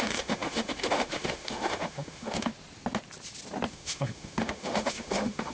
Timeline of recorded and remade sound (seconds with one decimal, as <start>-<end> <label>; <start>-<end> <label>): 0.0-2.5 remade; 2.5-3.7 recorded; 3.7-5.5 remade